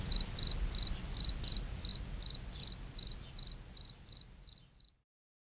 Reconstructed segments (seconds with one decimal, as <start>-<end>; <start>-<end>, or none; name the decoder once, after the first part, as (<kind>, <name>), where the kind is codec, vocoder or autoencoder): none